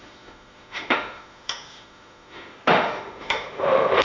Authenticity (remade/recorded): remade